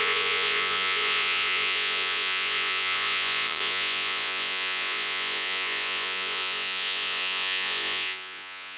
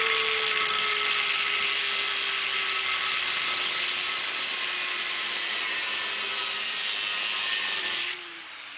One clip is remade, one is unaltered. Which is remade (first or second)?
first